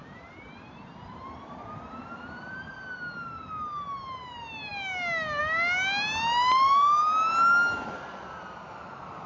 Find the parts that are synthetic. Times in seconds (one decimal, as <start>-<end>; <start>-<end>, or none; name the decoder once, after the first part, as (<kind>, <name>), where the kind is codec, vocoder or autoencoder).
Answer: 0.0-2.7 (vocoder, BigVGAN v2)